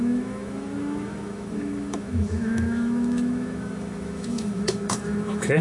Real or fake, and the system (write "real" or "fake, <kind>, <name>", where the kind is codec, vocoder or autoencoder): fake, autoencoder, DAC-VAE